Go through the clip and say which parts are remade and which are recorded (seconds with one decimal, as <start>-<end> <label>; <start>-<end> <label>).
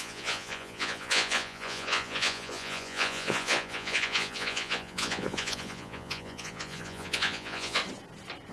0.0-7.8 remade; 7.8-8.5 recorded